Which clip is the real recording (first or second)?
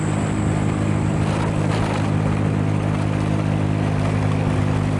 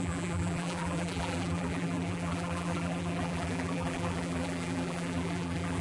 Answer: first